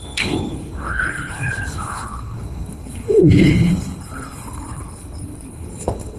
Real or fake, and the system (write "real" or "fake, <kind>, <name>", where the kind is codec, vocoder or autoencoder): fake, codec, HILCodec